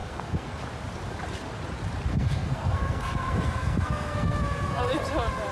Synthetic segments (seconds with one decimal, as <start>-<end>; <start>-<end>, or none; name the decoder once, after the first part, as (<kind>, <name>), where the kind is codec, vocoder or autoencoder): 0.0-0.6 (codec, SNAC); 2.1-4.9